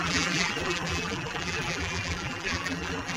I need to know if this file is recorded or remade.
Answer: remade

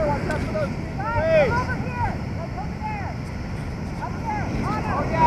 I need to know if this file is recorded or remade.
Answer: recorded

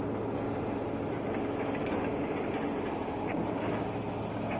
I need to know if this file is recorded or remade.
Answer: recorded